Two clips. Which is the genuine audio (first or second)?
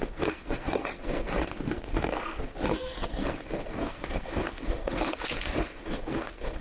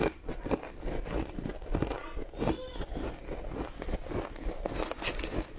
second